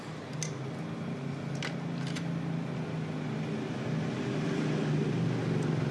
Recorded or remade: recorded